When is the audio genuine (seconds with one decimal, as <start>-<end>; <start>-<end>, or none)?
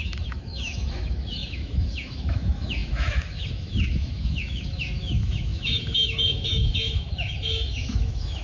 none